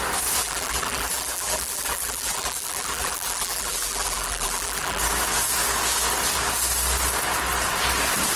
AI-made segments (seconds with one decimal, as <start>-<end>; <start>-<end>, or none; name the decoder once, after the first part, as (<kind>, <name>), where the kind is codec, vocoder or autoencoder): 0.4-5.0 (vocoder, BigVGAN v2)

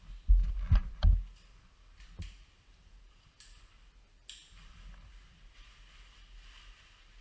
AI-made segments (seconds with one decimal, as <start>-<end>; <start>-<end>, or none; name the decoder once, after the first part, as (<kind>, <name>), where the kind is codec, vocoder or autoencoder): none

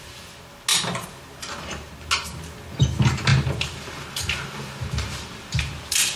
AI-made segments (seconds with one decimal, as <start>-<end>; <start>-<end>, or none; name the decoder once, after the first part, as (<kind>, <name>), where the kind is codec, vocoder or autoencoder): 0.7-1.9 (vocoder, BigVGAN v2); 3.3-5.6